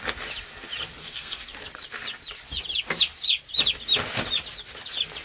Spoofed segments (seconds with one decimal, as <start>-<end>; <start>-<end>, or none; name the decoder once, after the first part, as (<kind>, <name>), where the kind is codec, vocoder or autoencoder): 1.0-1.5 (codec, SNAC)